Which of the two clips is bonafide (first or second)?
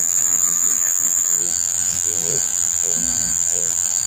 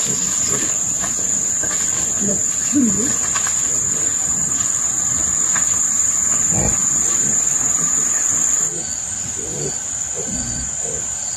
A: second